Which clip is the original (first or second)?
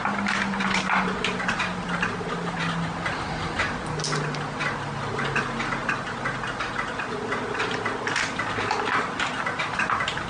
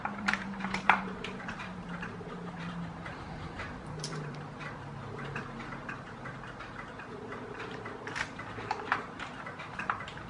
first